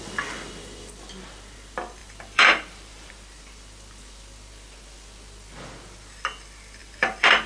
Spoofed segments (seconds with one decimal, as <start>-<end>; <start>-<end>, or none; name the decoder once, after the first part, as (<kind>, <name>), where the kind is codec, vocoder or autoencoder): 2.0-3.1 (vocoder, BigVGAN v2); 6.8-7.5